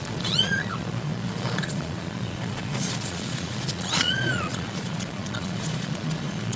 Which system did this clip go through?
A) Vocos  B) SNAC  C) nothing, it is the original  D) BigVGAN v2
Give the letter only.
A